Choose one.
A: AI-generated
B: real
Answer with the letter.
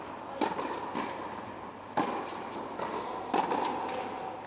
B